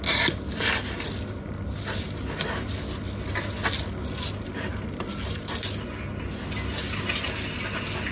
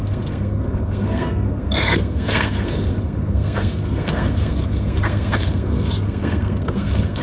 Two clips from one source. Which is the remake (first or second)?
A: second